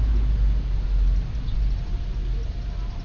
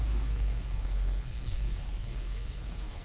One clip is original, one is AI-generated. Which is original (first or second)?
first